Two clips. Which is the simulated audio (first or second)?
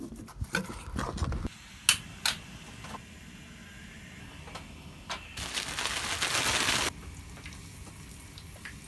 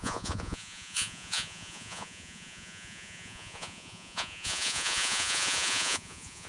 second